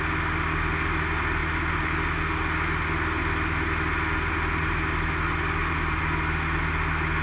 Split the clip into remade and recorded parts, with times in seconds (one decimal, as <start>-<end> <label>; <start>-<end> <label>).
0.0-7.2 recorded